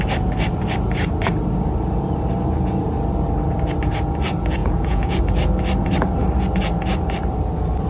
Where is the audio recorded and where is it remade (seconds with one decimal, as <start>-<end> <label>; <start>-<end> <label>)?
0.0-4.6 recorded; 4.6-5.2 remade; 5.2-7.9 recorded